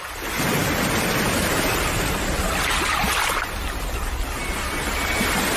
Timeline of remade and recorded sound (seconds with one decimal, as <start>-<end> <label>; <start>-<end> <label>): 0.0-5.6 recorded